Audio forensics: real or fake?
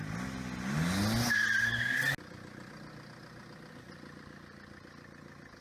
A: real